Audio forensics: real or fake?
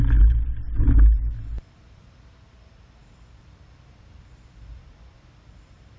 real